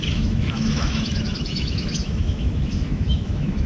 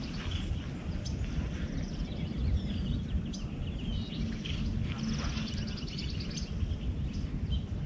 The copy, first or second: first